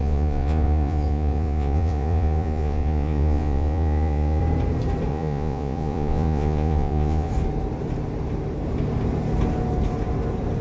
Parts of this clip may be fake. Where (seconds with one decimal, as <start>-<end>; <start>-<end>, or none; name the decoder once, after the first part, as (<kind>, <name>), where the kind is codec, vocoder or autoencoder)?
0.0-4.4 (vocoder, Vocos); 5.1-7.3